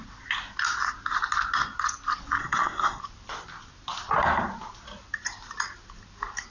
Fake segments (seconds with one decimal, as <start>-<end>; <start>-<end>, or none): 2.4-3.0